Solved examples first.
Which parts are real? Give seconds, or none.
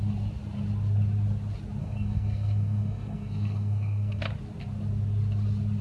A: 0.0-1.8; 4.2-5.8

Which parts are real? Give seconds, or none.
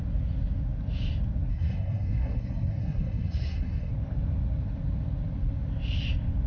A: 0.0-1.5; 3.9-6.5